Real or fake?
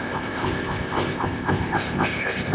fake